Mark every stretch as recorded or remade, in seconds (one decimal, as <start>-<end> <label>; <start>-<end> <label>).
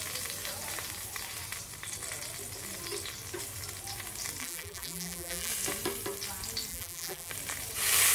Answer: 0.0-4.4 recorded; 4.4-5.5 remade; 5.5-6.7 recorded; 6.7-7.3 remade; 7.3-8.1 recorded